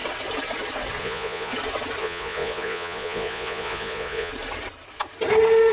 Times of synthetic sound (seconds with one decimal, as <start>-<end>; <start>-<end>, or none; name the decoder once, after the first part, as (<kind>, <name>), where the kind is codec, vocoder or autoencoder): 1.0-1.5 (vocoder, Vocos); 2.0-4.3